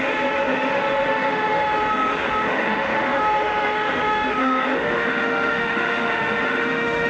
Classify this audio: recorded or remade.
remade